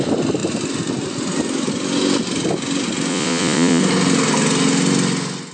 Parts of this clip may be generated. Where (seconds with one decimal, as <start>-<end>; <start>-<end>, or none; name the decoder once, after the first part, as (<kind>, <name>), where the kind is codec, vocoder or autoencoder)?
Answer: 3.1-3.8 (vocoder, Vocos)